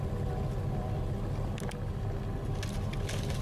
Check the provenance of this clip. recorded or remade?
recorded